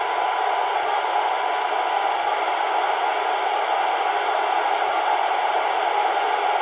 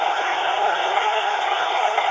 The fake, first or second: second